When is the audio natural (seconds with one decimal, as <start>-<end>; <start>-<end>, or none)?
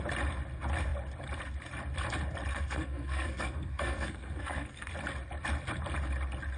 0.0-2.5; 4.9-6.6